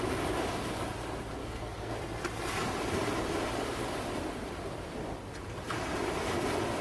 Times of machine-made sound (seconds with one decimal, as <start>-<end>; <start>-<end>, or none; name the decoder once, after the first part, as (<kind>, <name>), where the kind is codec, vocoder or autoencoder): 1.4-2.0 (codec, SNAC)